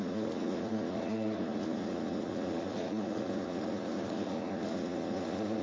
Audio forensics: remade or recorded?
remade